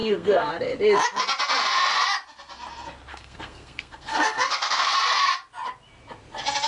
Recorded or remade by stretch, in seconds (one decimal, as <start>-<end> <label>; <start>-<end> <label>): 0.0-0.5 remade; 0.5-3.1 recorded; 3.1-4.9 remade; 4.9-6.7 recorded